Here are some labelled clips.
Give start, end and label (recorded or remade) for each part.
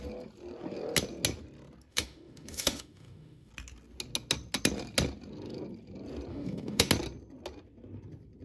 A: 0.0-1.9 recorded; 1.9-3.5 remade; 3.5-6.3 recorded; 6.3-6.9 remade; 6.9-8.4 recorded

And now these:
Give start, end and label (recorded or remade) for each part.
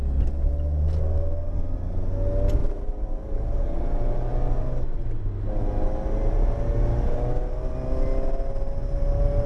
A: 0.0-2.6 recorded; 2.6-4.2 remade; 4.2-9.5 recorded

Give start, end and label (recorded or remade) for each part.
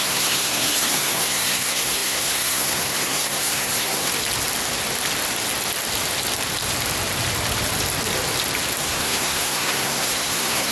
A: 0.0-4.1 remade; 4.1-8.8 recorded; 8.8-10.7 remade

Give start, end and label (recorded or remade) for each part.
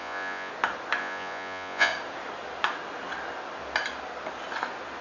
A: 0.0-0.5 remade; 0.5-1.0 recorded; 1.0-1.9 remade; 1.9-5.0 recorded